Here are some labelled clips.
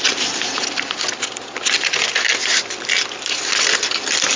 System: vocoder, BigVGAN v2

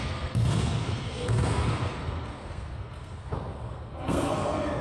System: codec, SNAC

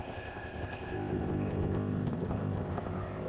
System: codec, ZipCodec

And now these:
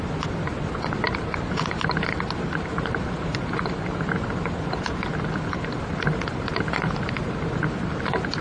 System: none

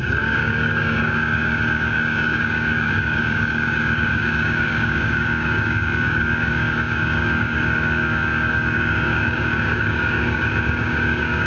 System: codec, DAC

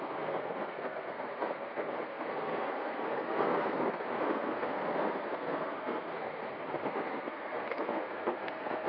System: codec, SNAC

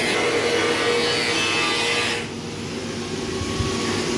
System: none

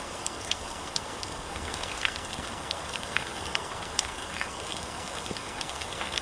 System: codec, SNAC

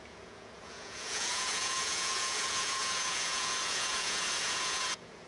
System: vocoder, Vocos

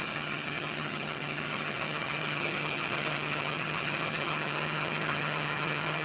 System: vocoder, HiFi-GAN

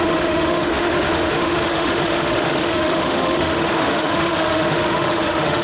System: autoencoder, DAC-VAE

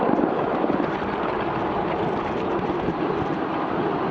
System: none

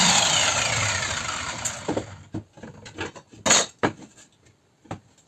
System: none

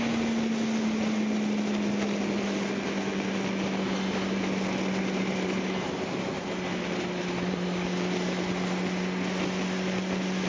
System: none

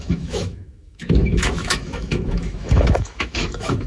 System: autoencoder, DAC-VAE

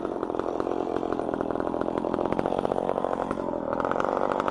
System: vocoder, BigVGAN v2